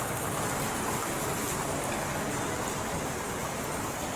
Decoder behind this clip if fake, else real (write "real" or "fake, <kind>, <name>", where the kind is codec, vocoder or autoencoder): real